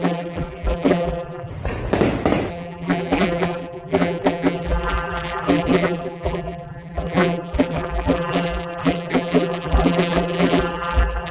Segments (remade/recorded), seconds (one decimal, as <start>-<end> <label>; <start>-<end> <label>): 0.0-1.5 remade; 1.5-2.5 recorded; 2.5-11.3 remade